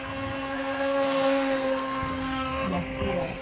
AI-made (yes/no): yes